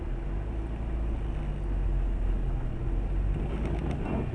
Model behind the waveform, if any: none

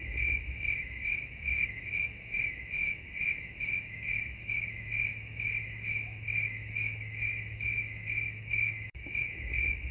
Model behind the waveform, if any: autoencoder, DAC-VAE